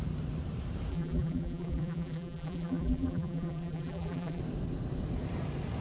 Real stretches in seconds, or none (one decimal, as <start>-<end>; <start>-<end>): 0.0-0.9; 4.4-5.8

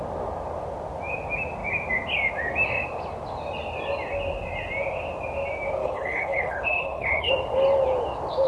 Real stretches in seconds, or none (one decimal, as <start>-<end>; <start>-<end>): 0.0-5.8; 7.3-8.5

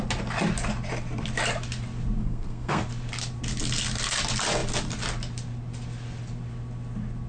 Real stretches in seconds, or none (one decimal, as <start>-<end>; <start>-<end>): 0.0-2.2; 2.8-7.3

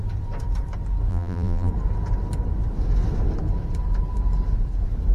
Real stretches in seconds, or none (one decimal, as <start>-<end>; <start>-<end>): 0.0-1.1; 1.7-5.1

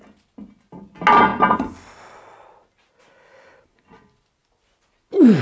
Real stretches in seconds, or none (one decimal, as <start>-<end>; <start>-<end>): 0.0-5.4

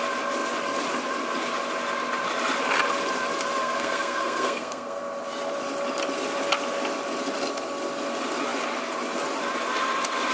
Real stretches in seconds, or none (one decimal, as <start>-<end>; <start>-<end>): 0.0-3.6; 5.0-10.3